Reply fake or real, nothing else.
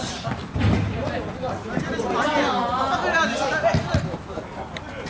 real